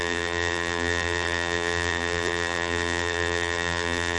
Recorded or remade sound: remade